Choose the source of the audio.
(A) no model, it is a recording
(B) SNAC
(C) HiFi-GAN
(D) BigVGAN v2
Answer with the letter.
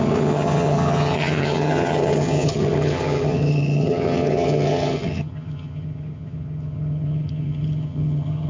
C